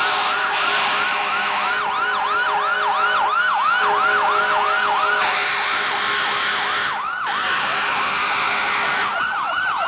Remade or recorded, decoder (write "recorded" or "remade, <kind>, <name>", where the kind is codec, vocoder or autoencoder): recorded